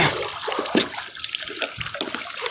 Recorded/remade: recorded